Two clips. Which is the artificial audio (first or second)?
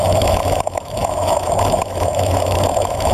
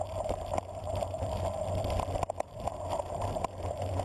first